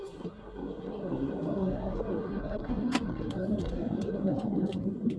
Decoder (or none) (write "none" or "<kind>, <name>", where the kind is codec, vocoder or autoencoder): codec, SNAC